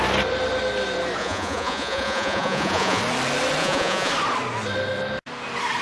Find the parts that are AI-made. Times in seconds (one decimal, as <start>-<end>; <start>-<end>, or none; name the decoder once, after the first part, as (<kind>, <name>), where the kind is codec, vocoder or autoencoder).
1.2-3.0 (vocoder, Vocos); 3.6-4.1